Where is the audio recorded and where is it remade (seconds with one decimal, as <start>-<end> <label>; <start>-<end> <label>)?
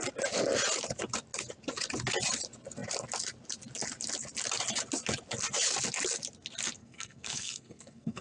0.0-6.8 recorded; 6.8-8.2 remade